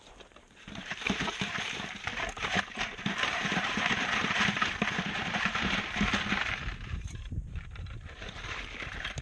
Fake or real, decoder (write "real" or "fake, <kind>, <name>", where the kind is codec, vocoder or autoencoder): fake, vocoder, BigVGAN v2